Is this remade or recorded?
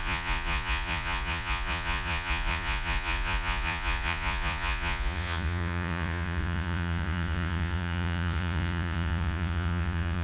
remade